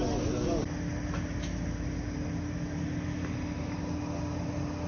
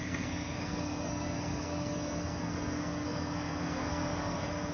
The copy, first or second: second